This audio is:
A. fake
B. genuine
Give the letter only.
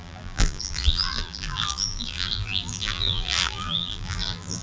A